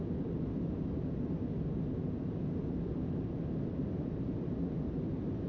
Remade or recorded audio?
recorded